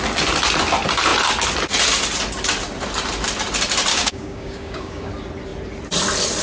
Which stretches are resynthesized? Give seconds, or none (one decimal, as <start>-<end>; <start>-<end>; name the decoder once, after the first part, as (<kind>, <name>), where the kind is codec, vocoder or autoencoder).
3.9-5.1 (codec, DAC)